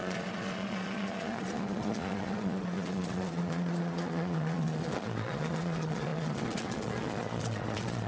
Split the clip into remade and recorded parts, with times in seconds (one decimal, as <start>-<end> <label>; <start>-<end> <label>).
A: 0.0-8.1 remade